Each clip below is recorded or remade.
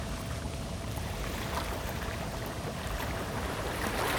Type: remade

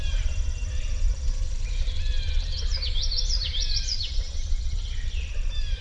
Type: remade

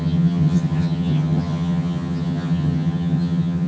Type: remade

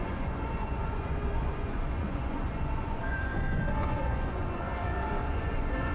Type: remade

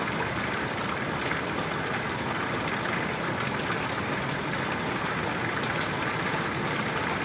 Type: recorded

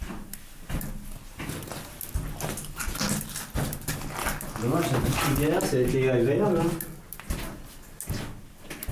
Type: recorded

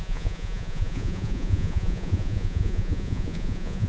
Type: remade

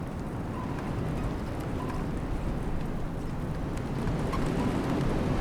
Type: recorded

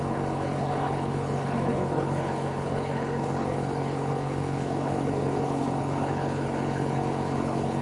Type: remade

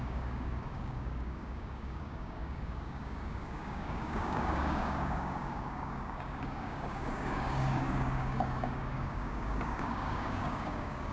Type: remade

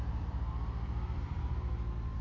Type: remade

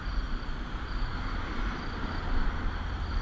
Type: recorded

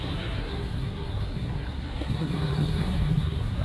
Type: remade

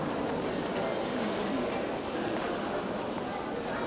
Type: recorded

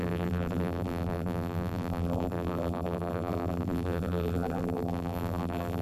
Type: remade